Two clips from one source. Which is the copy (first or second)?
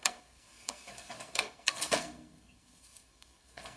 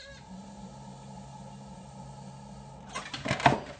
first